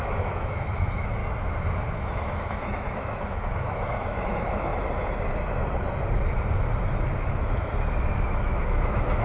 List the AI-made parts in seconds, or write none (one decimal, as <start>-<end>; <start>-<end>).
0.0-1.2; 2.0-4.7; 7.3-7.7; 8.3-9.2